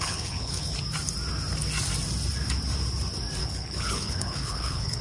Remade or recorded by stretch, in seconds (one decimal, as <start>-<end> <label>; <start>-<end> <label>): 0.0-0.7 remade; 0.7-3.4 recorded; 3.4-5.0 remade